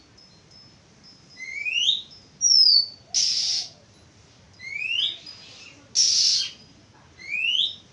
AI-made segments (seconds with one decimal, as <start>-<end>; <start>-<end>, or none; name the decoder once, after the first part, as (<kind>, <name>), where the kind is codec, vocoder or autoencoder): none

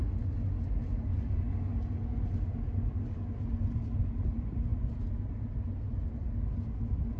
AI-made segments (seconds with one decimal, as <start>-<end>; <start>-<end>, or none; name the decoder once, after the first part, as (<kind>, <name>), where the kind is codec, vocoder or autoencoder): none

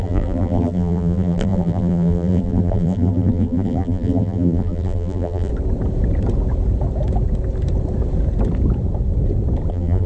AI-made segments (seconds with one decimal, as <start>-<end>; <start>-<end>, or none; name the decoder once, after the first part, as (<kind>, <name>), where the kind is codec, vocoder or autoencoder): 0.0-5.5 (vocoder, BigVGAN v2); 9.7-10.1

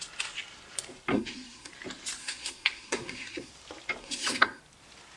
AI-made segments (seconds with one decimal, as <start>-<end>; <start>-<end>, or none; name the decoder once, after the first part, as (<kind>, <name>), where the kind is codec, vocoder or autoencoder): 1.1-1.7 (codec, SNAC); 2.2-3.5; 4.0-4.6

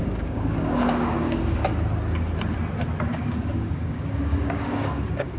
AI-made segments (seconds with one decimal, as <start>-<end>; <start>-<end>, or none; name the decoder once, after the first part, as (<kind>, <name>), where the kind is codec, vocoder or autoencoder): 0.0-1.6 (codec, DAC); 3.0-5.4